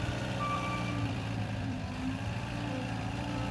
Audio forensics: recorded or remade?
remade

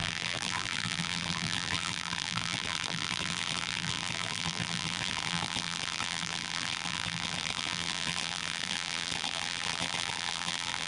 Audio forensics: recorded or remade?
remade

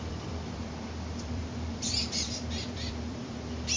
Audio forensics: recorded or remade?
remade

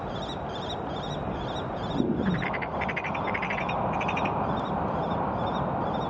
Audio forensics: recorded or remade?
remade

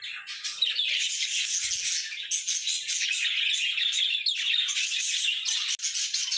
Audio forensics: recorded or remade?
recorded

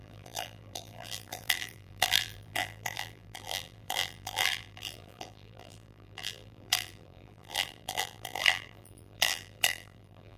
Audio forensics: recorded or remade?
remade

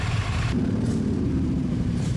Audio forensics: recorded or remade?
remade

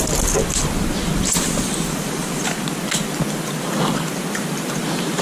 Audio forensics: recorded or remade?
recorded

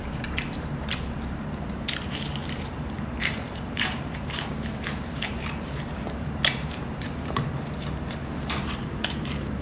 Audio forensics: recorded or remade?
remade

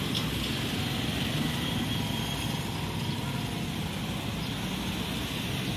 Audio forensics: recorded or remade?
recorded